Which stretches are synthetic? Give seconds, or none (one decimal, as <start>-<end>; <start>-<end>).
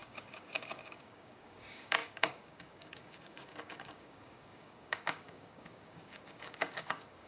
0.0-7.3